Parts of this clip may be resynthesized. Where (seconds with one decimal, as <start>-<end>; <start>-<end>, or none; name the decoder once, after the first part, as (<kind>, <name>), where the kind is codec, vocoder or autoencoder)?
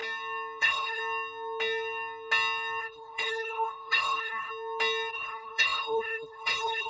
0.6-1.0 (codec, HILCodec); 2.8-4.5; 5.1-6.9